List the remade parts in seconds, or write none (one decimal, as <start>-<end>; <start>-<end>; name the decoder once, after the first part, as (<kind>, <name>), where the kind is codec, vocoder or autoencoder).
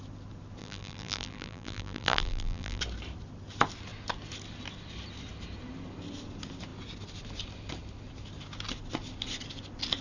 0.6-2.8 (vocoder, BigVGAN v2)